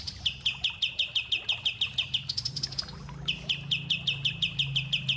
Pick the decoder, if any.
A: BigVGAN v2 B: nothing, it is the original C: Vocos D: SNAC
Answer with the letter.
B